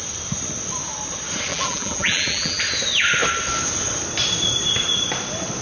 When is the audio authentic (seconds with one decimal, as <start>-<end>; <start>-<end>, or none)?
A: 0.0-1.5; 2.6-5.6